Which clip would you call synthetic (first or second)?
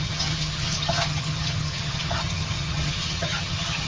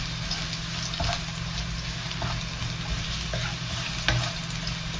first